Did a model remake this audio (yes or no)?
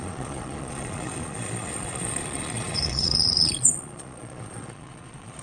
yes